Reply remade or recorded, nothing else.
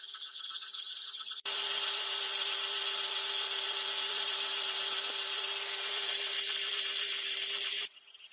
remade